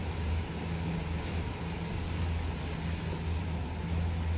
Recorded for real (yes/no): yes